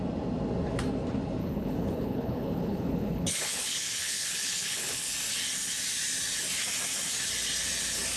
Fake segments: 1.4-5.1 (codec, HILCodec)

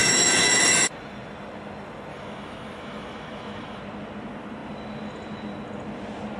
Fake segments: 0.0-0.6 (autoencoder, DAC-VAE); 2.1-3.8